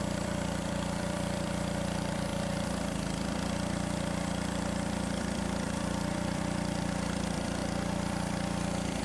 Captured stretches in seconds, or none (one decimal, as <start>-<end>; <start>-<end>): none